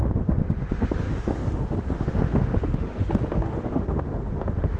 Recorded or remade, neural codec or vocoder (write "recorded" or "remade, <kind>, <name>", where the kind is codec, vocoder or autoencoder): remade, autoencoder, DAC-VAE